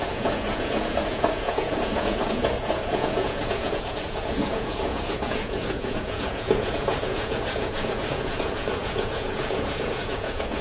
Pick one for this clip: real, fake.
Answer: fake